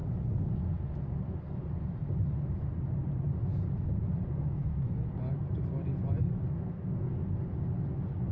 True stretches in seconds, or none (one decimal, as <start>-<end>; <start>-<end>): 0.0-1.6; 2.0-2.5; 4.6-8.3